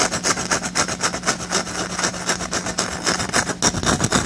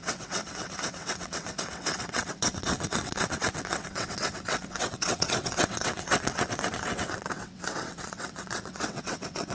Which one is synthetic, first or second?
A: second